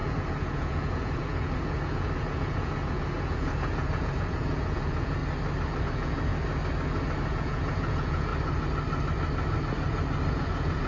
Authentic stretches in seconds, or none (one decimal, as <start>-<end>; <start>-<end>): 5.2-5.8; 6.3-7.3; 8.3-10.3